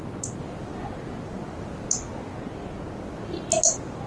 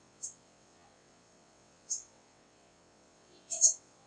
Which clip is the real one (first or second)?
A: first